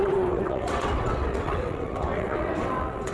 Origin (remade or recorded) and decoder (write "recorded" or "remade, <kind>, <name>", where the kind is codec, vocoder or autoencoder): remade, vocoder, WaveNeXt